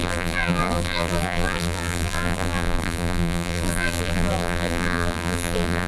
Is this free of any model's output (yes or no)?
no